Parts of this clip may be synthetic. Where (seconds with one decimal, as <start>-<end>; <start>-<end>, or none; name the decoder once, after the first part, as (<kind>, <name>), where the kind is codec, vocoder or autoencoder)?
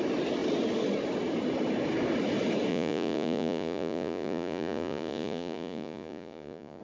2.7-6.8 (vocoder, Vocos)